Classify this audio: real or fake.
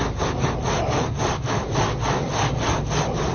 real